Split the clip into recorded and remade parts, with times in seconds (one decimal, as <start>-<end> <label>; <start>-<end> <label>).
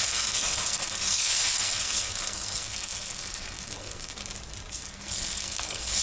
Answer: 0.0-4.2 remade; 4.2-4.7 recorded; 4.7-6.0 remade